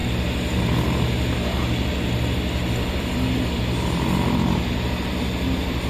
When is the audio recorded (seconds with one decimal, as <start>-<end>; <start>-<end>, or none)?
0.0-5.9